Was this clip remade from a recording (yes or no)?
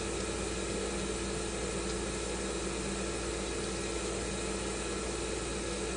no